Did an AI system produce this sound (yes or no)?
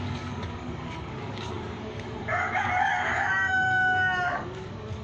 yes